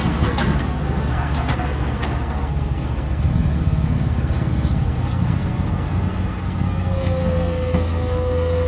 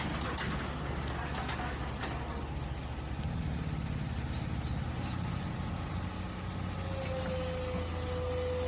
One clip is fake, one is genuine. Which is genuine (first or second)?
second